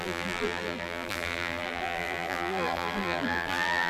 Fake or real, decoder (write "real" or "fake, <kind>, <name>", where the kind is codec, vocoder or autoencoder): fake, vocoder, BigVGAN v2